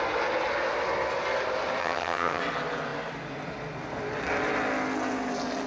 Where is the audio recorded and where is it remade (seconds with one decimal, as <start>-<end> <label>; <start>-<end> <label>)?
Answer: 0.0-1.8 recorded; 1.8-2.4 remade; 2.4-5.7 recorded